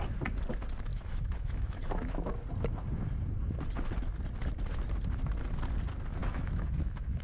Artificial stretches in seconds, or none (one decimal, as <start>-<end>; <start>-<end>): 0.9-2.3; 6.2-7.2